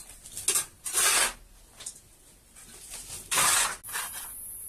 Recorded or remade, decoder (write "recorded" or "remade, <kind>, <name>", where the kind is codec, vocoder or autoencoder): recorded